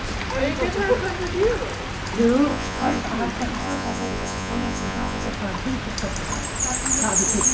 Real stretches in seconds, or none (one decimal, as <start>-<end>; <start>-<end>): 0.0-2.5; 3.0-3.6; 5.3-7.5